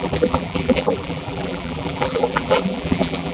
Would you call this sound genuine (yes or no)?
no